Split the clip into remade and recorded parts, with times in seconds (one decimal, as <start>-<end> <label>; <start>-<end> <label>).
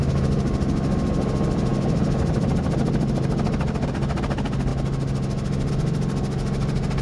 0.0-7.0 recorded